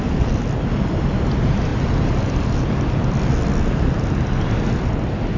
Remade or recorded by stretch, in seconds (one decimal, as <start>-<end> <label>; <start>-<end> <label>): 0.0-5.4 recorded

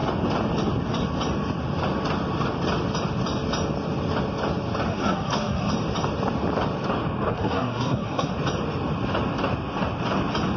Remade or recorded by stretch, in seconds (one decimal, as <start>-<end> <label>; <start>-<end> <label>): 0.0-4.9 recorded; 4.9-5.7 remade; 5.7-7.3 recorded; 7.3-8.3 remade; 8.3-10.6 recorded

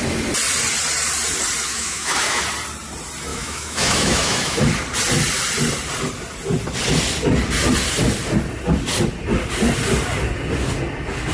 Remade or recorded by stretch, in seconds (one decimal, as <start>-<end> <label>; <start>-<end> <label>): 0.0-1.7 recorded; 1.7-2.4 remade; 2.4-3.3 recorded; 3.3-4.6 remade; 4.6-11.3 recorded

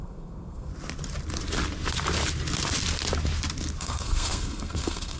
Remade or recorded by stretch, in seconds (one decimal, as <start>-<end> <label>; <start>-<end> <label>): 0.0-0.7 remade; 0.7-3.8 recorded; 3.8-5.2 remade